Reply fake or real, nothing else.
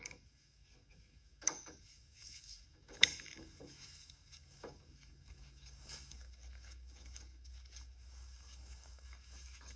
fake